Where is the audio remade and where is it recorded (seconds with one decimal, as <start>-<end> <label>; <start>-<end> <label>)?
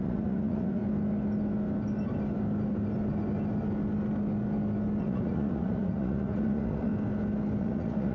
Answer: 0.0-0.8 remade; 0.8-5.0 recorded; 5.0-6.9 remade; 6.9-7.6 recorded; 7.6-8.1 remade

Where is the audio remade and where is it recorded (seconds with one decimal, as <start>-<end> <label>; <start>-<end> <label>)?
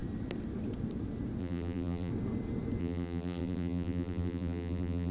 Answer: 0.0-1.4 recorded; 1.4-2.1 remade; 2.1-2.8 recorded; 2.8-5.1 remade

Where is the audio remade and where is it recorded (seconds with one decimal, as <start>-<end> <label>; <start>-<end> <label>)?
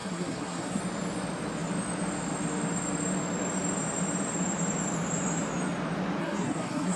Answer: 0.0-0.8 remade; 0.8-6.2 recorded; 6.2-7.0 remade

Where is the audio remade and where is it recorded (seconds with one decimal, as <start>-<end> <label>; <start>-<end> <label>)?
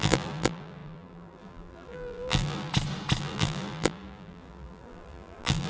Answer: 0.0-2.7 remade; 2.7-3.2 recorded; 3.2-5.7 remade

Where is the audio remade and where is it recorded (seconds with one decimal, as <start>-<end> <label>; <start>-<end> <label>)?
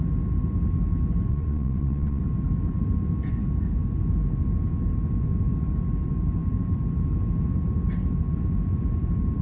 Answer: 0.0-1.3 recorded; 1.3-2.2 remade; 2.2-9.4 recorded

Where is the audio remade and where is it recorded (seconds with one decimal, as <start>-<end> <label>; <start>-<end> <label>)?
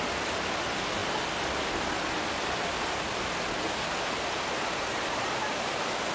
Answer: 0.0-6.1 recorded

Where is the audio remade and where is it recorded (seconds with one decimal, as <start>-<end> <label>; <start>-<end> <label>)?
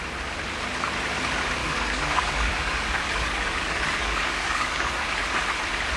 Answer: 0.0-1.6 recorded; 1.6-5.2 remade; 5.2-6.0 recorded